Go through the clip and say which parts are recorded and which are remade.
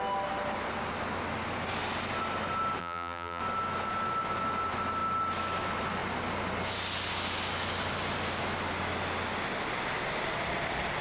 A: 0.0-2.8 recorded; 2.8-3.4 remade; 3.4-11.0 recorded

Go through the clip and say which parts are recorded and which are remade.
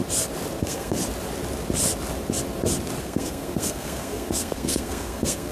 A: 0.0-0.6 recorded; 0.6-1.0 remade; 1.0-3.0 recorded; 3.0-5.5 remade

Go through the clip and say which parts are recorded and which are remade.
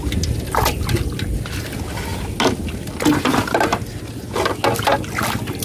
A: 0.0-5.6 recorded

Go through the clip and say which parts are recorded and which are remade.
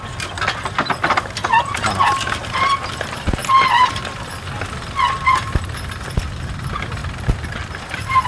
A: 0.0-2.4 remade; 2.4-3.0 recorded; 3.0-3.4 remade; 3.4-5.1 recorded; 5.1-7.0 remade; 7.0-7.8 recorded; 7.8-8.3 remade